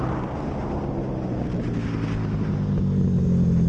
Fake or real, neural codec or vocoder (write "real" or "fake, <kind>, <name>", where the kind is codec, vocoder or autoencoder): real